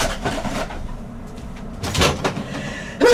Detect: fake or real fake